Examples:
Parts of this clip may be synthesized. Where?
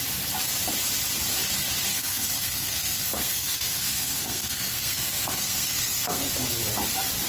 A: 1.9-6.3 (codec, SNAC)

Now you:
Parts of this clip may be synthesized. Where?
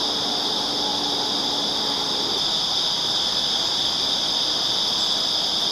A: none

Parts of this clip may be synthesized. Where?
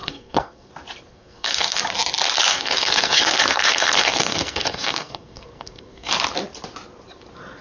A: 0.0-0.7 (codec, SNAC); 1.1-1.8; 2.5-6.1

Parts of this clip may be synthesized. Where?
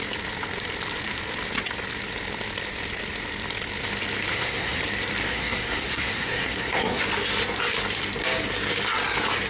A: 4.3-4.8 (codec, SNAC); 5.3-7.0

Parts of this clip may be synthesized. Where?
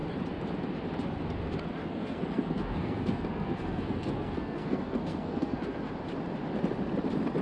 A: 1.8-5.9 (codec, SNAC)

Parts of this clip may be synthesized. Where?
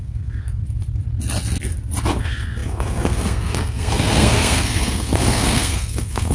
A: 0.0-0.6 (codec, SNAC); 2.2-6.3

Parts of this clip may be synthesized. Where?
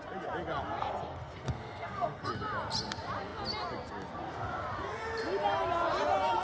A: 0.8-2.3 (codec, SNAC)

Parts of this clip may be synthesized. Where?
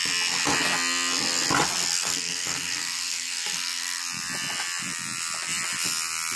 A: 1.9-4.0 (codec, SNAC)